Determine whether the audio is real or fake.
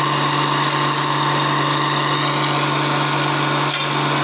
real